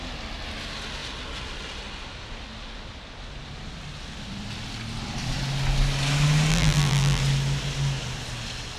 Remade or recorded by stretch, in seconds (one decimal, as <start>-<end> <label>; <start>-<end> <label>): 0.0-6.5 recorded; 6.5-7.2 remade; 7.2-8.8 recorded

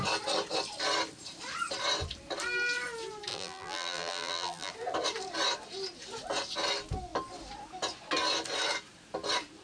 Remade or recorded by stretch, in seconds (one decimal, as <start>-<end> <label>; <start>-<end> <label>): 0.0-3.3 recorded; 3.3-4.7 remade; 4.7-9.6 recorded

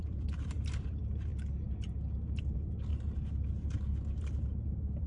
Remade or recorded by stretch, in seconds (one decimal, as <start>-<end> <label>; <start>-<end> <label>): 0.0-1.3 remade; 1.3-2.4 recorded; 2.4-2.9 remade; 2.9-3.5 recorded; 3.5-5.1 remade

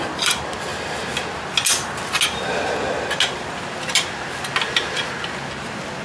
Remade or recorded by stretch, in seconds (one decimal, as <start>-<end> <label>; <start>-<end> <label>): 0.0-6.0 recorded

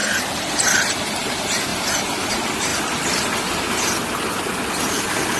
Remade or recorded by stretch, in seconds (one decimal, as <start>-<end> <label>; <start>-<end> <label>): 0.0-1.7 recorded; 1.7-2.3 remade; 2.3-5.4 recorded